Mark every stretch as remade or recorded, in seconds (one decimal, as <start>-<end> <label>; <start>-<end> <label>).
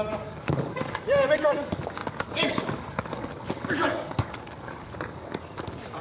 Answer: 0.0-6.0 remade